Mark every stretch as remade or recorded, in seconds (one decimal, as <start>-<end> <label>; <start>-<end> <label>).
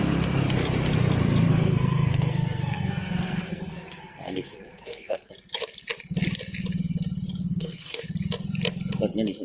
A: 0.0-1.5 recorded; 1.5-5.3 remade; 5.3-7.5 recorded; 7.5-8.0 remade; 8.0-9.4 recorded